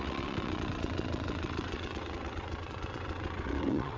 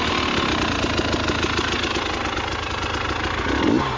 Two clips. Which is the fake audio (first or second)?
first